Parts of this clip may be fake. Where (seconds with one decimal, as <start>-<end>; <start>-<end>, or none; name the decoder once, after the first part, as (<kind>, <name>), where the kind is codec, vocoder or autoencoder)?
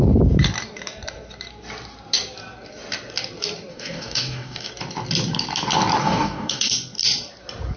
3.7-4.7 (codec, DAC); 6.0-6.7